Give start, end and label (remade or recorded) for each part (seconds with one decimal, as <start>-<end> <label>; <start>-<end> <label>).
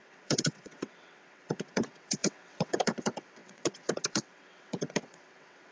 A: 0.0-5.7 remade